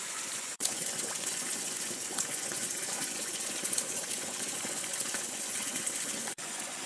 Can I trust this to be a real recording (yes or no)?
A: no